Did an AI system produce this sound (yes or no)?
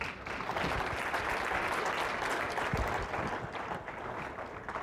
no